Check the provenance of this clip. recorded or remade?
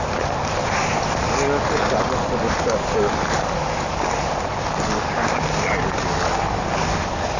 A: recorded